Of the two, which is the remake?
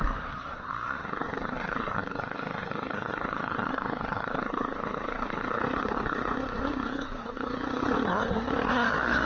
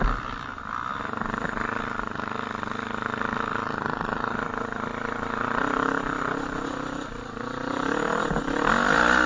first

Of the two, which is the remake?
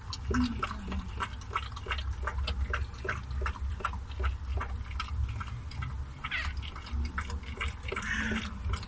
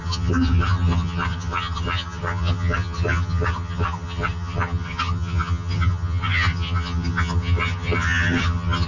second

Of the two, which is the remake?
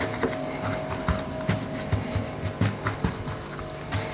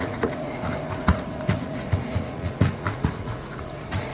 second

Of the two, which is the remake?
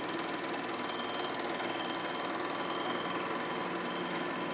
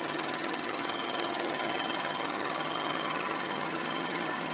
second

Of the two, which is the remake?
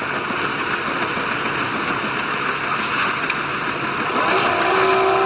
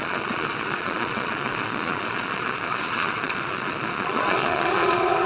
second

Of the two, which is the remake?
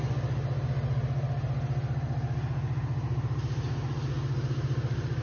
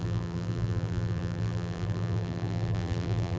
second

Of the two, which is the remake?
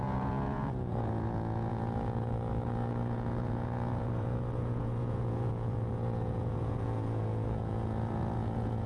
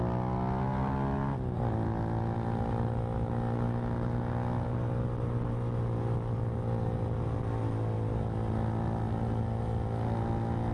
first